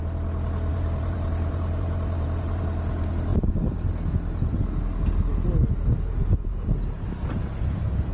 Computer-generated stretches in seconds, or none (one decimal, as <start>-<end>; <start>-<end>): 0.7-2.6